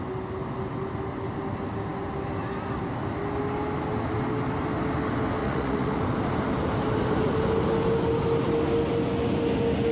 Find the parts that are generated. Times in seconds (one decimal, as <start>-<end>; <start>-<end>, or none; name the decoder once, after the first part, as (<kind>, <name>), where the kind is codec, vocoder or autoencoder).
5.4-6.0 (vocoder, Vocos)